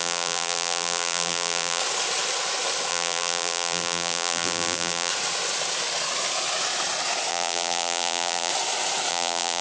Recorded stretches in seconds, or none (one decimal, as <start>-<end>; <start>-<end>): 1.8-2.9; 5.1-7.3; 8.5-9.1